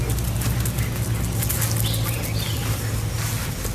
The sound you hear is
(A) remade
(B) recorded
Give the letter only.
B